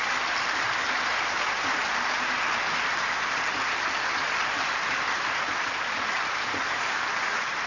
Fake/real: real